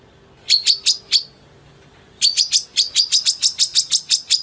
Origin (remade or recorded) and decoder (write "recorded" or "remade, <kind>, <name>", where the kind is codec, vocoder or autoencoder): recorded